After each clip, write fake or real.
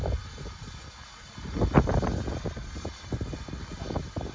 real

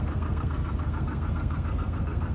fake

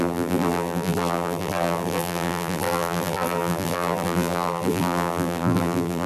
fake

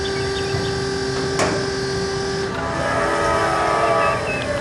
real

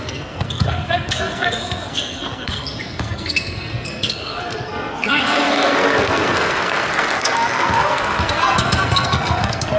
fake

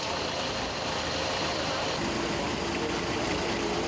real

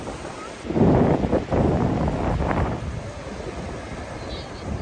real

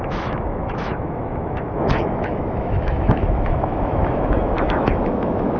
fake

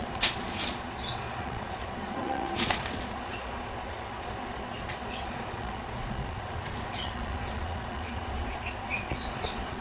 fake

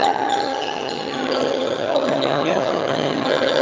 fake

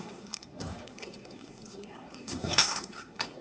fake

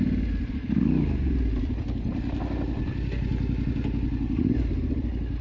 real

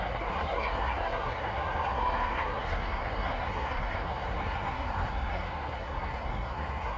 fake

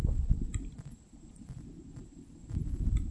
real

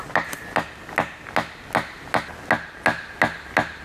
real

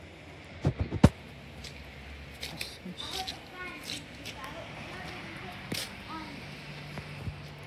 real